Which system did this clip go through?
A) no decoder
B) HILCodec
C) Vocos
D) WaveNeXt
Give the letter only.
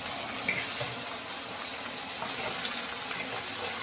A